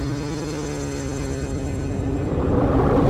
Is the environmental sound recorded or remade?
recorded